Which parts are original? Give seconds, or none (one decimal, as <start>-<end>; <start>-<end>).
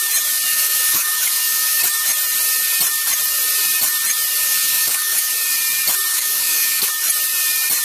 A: 0.0-0.5; 1.8-4.4; 5.3-6.1; 6.9-7.8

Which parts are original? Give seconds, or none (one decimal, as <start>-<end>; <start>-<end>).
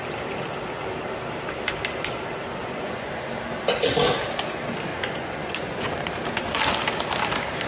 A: 0.0-2.6; 3.3-4.9; 5.9-7.7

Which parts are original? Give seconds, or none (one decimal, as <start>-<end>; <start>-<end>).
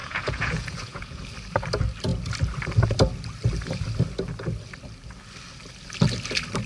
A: 1.2-6.7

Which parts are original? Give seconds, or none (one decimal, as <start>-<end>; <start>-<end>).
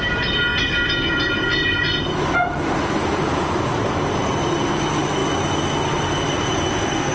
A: 0.0-7.1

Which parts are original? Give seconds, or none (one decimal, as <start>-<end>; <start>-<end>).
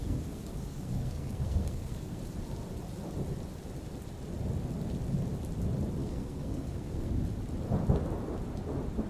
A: 2.2-6.0; 7.1-9.1